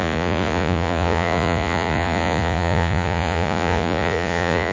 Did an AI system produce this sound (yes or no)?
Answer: yes